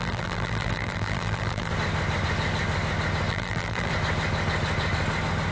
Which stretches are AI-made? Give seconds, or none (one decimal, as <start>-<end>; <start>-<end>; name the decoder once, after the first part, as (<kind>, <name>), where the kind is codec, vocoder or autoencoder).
0.0-1.7 (vocoder, BigVGAN v2); 3.3-3.9